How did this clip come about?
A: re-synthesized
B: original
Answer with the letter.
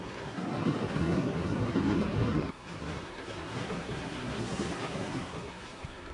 A